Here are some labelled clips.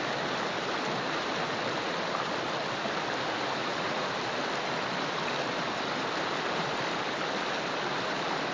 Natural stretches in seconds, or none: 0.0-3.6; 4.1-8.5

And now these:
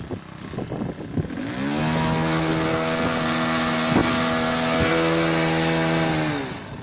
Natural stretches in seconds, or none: 0.0-6.8

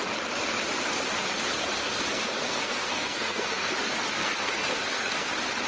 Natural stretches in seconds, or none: 0.0-1.8; 3.7-4.2; 5.3-5.7

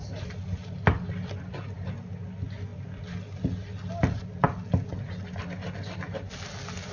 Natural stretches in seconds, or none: 0.0-6.9

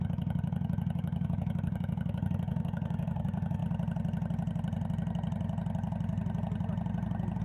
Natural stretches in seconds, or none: 3.6-7.4

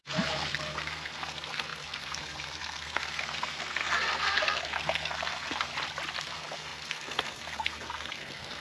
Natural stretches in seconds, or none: 5.7-6.2